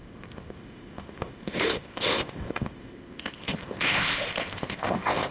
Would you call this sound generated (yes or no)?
yes